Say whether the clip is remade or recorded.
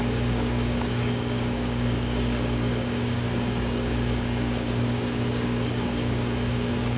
remade